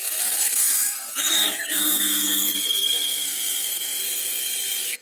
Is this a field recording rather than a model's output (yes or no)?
no